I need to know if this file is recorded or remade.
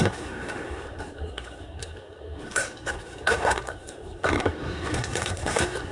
remade